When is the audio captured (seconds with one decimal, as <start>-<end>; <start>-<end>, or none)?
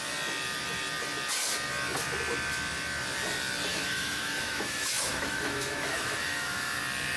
0.0-3.7; 6.8-7.2